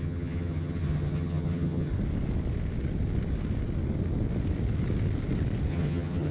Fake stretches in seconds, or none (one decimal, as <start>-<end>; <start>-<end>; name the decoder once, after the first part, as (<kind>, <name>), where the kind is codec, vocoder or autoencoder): 0.0-1.9 (vocoder, HiFi-GAN); 5.7-6.3